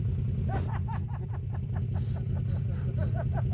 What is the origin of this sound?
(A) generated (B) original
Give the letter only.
B